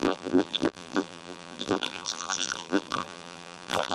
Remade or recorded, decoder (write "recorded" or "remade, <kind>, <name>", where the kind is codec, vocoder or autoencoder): remade, vocoder, BigVGAN v2